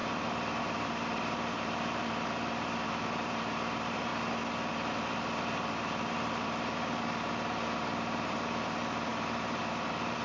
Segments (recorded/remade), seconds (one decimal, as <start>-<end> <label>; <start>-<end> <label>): 0.0-4.1 remade; 4.1-4.7 recorded; 4.7-10.2 remade